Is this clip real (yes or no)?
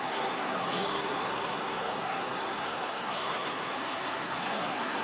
no